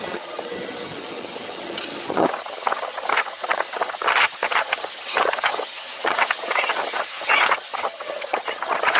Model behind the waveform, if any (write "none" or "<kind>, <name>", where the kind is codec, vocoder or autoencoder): vocoder, HiFi-GAN